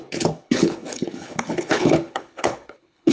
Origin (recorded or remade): remade